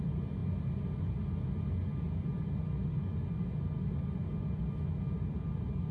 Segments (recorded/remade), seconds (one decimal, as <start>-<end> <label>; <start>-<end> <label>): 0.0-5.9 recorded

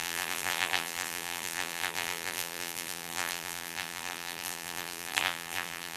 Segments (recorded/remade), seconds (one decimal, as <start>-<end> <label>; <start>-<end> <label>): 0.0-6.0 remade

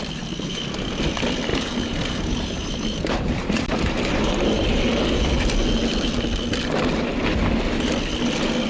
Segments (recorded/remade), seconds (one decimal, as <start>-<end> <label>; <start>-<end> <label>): 0.0-1.5 recorded; 1.5-4.8 remade; 4.8-8.7 recorded

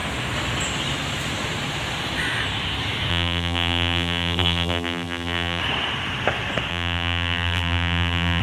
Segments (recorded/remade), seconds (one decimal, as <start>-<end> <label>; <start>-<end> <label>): 0.0-3.1 recorded; 3.1-5.6 remade; 5.6-6.7 recorded; 6.7-8.4 remade